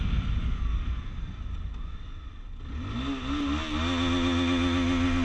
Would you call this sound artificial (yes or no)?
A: no